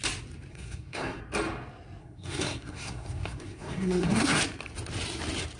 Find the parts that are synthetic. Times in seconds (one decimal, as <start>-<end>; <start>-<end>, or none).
0.5-1.2; 2.0-4.4